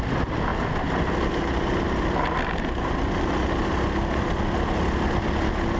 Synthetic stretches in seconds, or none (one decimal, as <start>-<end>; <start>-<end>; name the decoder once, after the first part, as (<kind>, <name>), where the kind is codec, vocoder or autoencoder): none